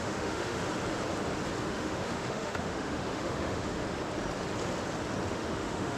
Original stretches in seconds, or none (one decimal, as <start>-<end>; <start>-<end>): 0.6-1.6; 3.8-5.3